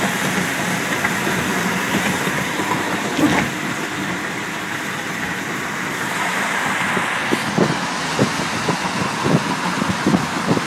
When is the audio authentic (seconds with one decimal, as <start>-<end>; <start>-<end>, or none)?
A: 0.0-1.5; 2.3-10.7